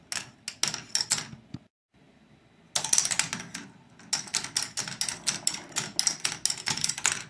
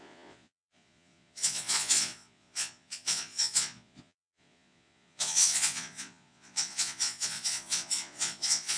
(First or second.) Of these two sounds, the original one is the first